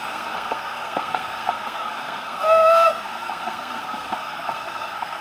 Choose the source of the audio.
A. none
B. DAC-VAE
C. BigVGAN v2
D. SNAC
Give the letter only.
D